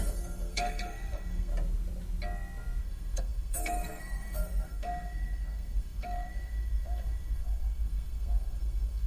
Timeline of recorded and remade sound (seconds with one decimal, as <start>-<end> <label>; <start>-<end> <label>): 0.0-1.5 remade; 1.5-2.8 recorded; 2.8-9.1 remade